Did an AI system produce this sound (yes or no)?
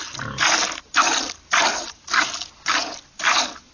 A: no